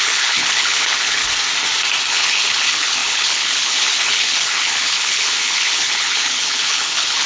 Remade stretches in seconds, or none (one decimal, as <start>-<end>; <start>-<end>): 0.0-1.2; 2.1-7.3